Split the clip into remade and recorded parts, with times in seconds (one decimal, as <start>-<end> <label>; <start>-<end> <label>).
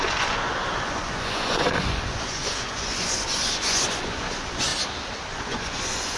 0.0-4.7 remade; 4.7-5.3 recorded; 5.3-6.2 remade